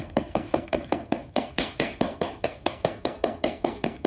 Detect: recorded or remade remade